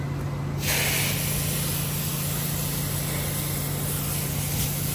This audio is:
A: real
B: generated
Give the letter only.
A